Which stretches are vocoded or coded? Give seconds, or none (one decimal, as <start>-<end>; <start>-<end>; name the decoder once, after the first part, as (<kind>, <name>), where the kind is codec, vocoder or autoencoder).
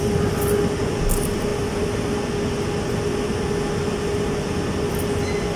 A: none